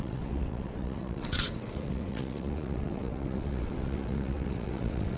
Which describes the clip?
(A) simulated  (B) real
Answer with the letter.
A